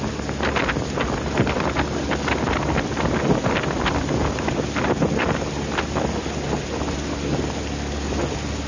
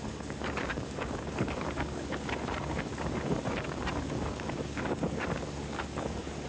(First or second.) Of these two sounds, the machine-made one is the second